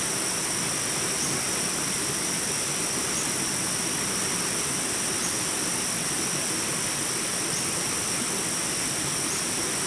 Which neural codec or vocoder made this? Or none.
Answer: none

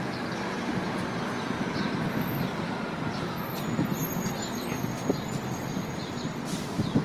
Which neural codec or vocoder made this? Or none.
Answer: none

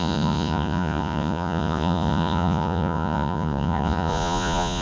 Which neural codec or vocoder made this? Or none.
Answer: vocoder, Vocos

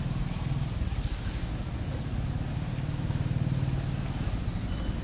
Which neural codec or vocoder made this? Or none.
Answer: none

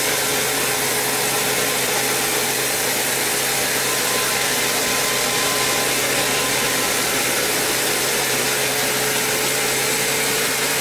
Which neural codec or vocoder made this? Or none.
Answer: none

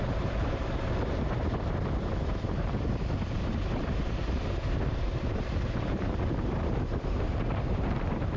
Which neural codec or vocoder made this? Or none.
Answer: vocoder, BigVGAN v2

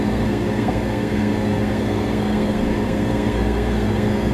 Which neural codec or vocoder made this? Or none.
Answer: codec, SNAC